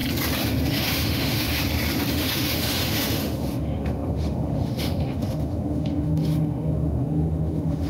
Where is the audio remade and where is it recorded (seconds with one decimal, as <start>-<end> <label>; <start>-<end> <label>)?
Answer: 0.0-0.7 recorded; 0.7-1.6 remade; 1.6-2.1 recorded; 2.1-7.9 remade